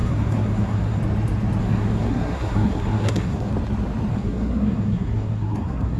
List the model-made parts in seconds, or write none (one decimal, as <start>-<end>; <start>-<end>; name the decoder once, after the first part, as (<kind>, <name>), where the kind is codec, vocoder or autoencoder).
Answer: 0.0-1.0 (codec, SNAC); 1.6-3.5; 4.1-6.0